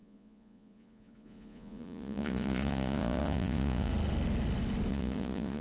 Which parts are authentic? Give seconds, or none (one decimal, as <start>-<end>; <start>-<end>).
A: 3.9-4.9